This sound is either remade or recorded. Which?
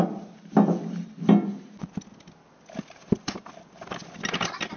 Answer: recorded